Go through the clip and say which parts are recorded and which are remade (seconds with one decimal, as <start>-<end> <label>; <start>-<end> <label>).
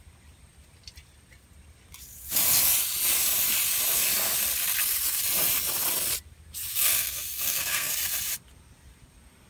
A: 0.0-6.7 recorded; 6.7-7.9 remade; 7.9-9.5 recorded